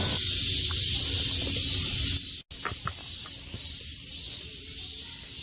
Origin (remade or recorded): recorded